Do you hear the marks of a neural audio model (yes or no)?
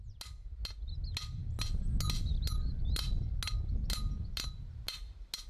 no